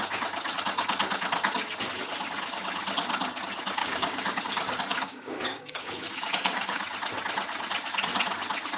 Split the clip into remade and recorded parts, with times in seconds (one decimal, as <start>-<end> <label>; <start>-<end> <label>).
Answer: 0.0-3.8 recorded; 3.8-4.4 remade; 4.4-4.9 recorded; 4.9-6.8 remade; 6.8-8.8 recorded